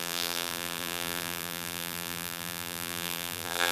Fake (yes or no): yes